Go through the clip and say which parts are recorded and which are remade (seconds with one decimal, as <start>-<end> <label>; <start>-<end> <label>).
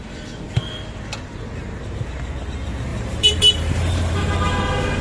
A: 0.0-1.4 recorded; 1.4-2.0 remade; 2.0-2.9 recorded; 2.9-4.5 remade; 4.5-5.0 recorded